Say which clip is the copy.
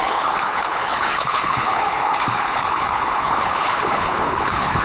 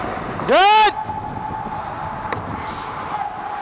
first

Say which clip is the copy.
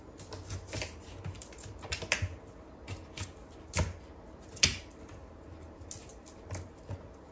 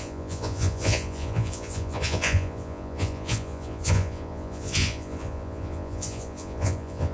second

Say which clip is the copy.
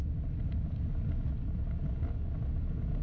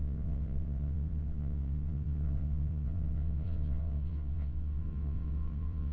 second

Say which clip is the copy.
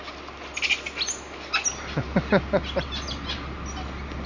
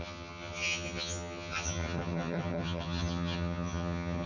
second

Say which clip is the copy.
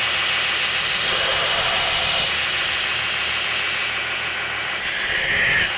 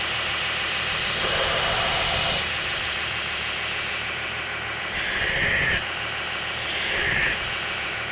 second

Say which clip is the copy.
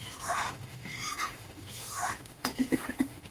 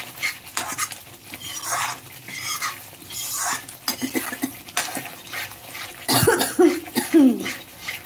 first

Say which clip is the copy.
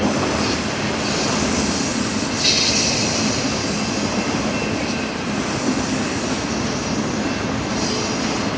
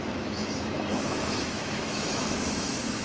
second